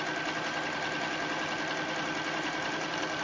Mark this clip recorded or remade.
recorded